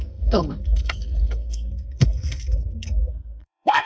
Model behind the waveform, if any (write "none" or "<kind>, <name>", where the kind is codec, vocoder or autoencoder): codec, SNAC